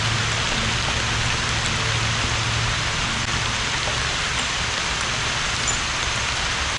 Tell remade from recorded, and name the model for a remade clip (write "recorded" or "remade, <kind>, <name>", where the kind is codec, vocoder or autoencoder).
recorded